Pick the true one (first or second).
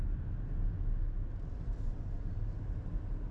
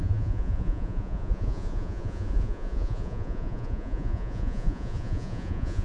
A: first